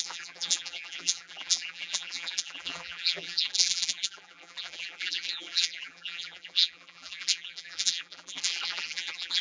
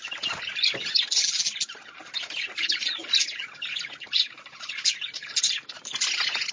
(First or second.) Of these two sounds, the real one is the second